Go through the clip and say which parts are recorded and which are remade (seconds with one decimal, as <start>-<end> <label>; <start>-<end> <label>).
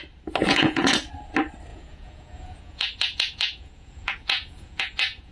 0.0-0.4 recorded; 0.4-1.1 remade; 1.1-1.7 recorded; 1.7-5.3 remade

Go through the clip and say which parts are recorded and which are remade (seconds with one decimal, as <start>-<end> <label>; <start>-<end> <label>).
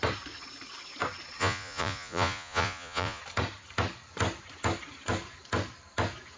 0.0-1.4 recorded; 1.4-3.2 remade; 3.2-6.4 recorded